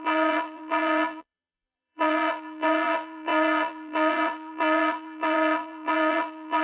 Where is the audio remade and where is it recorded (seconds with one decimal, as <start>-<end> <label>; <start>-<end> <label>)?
0.0-6.6 remade